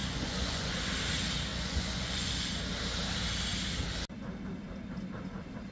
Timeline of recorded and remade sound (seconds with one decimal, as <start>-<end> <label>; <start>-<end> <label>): 0.0-0.8 remade; 0.8-1.5 recorded; 1.5-2.5 remade; 2.5-5.7 recorded